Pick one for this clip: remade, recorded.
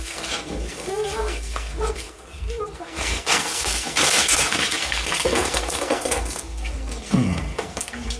remade